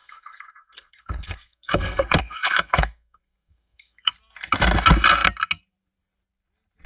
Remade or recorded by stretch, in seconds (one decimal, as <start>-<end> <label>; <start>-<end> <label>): 0.0-4.1 remade; 4.1-6.9 recorded